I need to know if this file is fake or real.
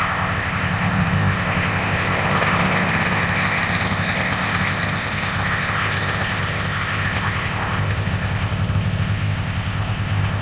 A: fake